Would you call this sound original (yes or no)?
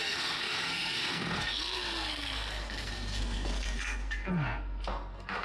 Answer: no